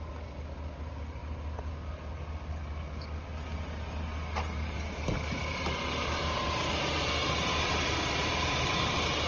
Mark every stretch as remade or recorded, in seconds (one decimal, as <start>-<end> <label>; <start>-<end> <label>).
0.0-9.3 recorded